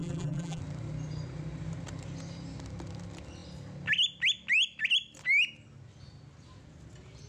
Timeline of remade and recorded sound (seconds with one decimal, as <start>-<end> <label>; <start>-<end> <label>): 0.0-0.6 remade; 0.6-7.3 recorded